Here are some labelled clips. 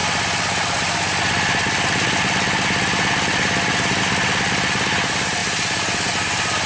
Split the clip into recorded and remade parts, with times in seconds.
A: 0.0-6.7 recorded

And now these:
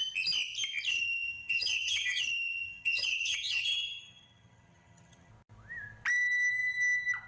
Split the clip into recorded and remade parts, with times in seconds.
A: 0.0-0.9 recorded; 0.9-5.3 remade; 5.3-7.3 recorded

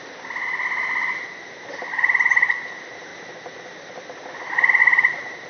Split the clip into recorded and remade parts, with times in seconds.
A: 0.0-5.5 recorded

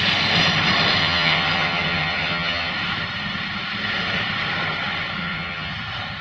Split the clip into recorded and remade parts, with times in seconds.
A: 0.0-1.0 recorded; 1.0-2.7 remade; 2.7-5.2 recorded; 5.2-5.7 remade; 5.7-6.2 recorded

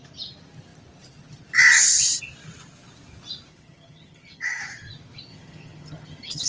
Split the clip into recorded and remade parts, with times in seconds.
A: 0.0-3.5 recorded; 3.5-4.6 remade; 4.6-5.3 recorded; 5.3-6.5 remade

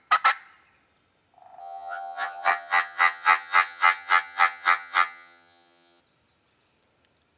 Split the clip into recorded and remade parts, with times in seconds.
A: 0.0-1.6 recorded; 1.6-6.0 remade; 6.0-7.4 recorded

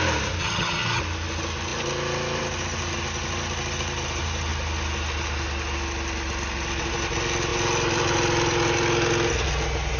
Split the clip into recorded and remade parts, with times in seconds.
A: 0.0-0.4 recorded; 0.4-1.0 remade; 1.0-10.0 recorded